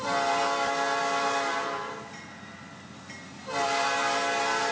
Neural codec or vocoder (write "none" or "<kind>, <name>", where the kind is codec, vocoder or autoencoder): none